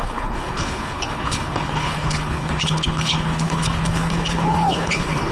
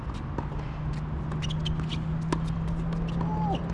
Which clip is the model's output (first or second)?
first